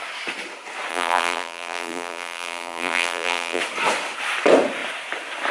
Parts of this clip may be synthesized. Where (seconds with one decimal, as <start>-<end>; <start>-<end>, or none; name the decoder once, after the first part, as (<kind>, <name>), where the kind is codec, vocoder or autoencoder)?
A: 0.9-3.6 (vocoder, BigVGAN v2)